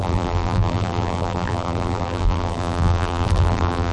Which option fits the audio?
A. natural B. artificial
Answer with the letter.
B